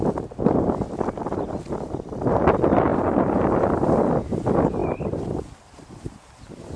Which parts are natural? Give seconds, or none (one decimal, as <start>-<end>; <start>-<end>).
0.0-2.9; 4.0-6.8